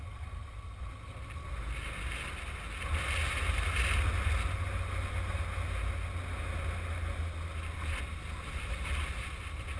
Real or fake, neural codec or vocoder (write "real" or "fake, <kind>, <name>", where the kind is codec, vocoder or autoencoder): real